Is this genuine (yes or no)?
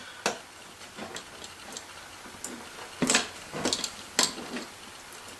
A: yes